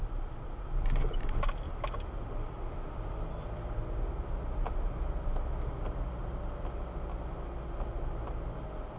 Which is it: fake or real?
real